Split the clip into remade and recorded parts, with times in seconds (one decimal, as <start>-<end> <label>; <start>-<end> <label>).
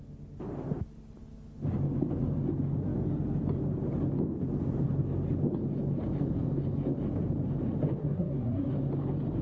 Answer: 0.0-8.0 recorded; 8.0-8.7 remade; 8.7-9.4 recorded